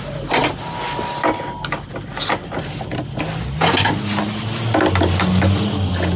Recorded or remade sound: recorded